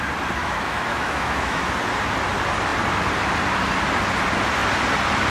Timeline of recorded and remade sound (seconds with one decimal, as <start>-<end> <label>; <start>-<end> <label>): 0.0-0.4 recorded; 0.4-1.7 remade; 1.7-5.3 recorded